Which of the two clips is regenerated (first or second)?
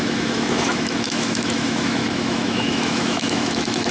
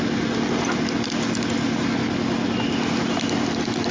first